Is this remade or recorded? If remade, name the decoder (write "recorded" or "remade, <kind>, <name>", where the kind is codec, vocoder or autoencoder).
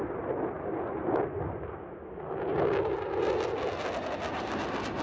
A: recorded